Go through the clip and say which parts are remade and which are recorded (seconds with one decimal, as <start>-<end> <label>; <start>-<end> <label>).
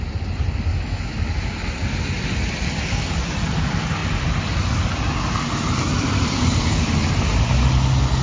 0.0-0.7 recorded; 0.7-1.5 remade; 1.5-8.2 recorded